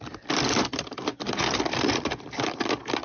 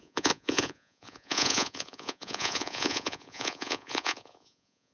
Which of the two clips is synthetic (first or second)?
second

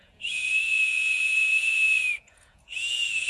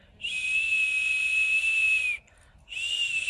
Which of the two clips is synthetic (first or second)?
first